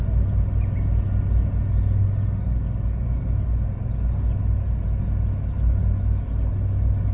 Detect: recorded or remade recorded